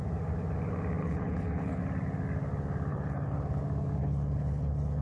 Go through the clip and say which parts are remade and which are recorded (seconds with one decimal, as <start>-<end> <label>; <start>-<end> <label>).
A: 0.0-1.0 recorded; 1.0-1.8 remade; 1.8-2.9 recorded; 2.9-3.6 remade; 3.6-4.0 recorded; 4.0-5.0 remade